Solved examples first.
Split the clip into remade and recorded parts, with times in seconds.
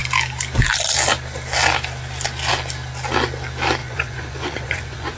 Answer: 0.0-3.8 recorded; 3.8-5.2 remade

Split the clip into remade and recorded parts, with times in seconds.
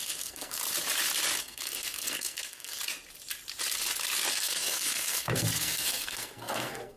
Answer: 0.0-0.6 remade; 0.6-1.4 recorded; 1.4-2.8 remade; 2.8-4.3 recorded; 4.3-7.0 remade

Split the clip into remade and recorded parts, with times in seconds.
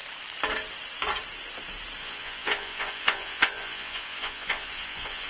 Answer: 0.0-2.0 recorded; 2.0-5.3 remade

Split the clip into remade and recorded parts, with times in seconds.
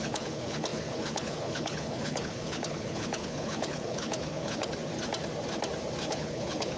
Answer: 0.0-4.8 remade; 4.8-6.1 recorded; 6.1-6.8 remade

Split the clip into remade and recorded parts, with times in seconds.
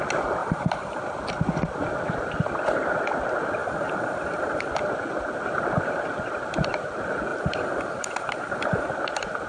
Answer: 0.0-0.4 recorded; 0.4-1.0 remade; 1.0-3.6 recorded; 3.6-4.7 remade; 4.7-7.3 recorded; 7.3-8.9 remade; 8.9-9.5 recorded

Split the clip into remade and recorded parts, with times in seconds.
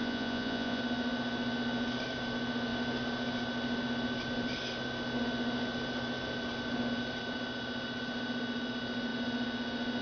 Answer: 0.0-0.8 remade; 0.8-10.0 recorded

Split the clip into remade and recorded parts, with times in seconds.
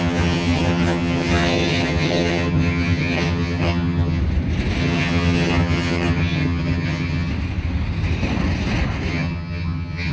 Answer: 0.0-4.2 remade; 4.2-4.8 recorded; 4.8-7.3 remade; 7.3-9.1 recorded; 9.1-10.1 remade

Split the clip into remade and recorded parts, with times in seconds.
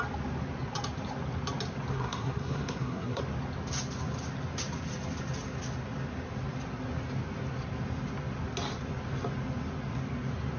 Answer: 0.0-1.9 recorded; 1.9-3.2 remade; 3.2-10.6 recorded